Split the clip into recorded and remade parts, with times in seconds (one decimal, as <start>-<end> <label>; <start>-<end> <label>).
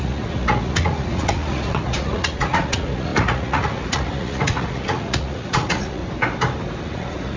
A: 0.0-6.0 remade; 6.0-6.8 recorded; 6.8-7.4 remade